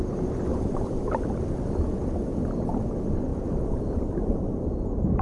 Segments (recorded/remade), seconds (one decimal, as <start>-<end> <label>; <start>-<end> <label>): 0.0-0.5 recorded; 0.5-1.1 remade; 1.1-3.3 recorded; 3.3-3.8 remade; 3.8-5.2 recorded